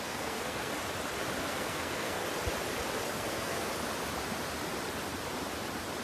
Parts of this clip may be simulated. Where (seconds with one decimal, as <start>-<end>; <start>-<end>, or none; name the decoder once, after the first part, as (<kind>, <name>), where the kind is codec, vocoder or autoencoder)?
0.0-0.7 (codec, SNAC); 1.4-2.2; 3.1-3.7